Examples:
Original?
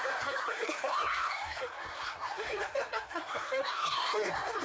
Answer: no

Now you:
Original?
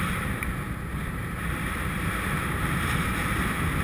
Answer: no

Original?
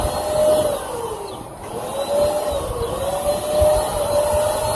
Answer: yes